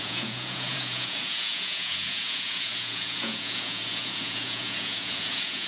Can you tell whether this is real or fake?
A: fake